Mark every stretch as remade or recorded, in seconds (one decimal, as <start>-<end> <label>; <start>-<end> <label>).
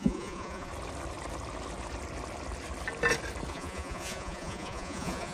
0.0-0.7 remade; 0.7-3.5 recorded; 3.5-5.3 remade